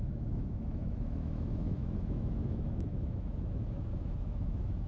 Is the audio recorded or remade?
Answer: remade